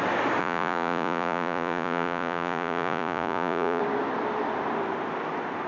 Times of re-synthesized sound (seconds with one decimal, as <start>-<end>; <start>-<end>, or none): 0.4-3.8